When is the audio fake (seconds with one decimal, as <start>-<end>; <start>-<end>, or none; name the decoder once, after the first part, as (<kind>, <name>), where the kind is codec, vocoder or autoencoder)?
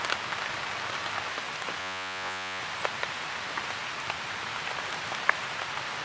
1.8-2.6 (vocoder, Vocos)